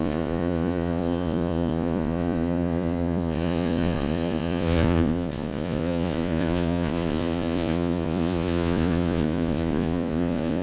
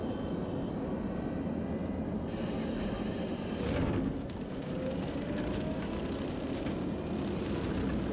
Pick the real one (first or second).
second